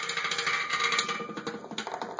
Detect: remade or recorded recorded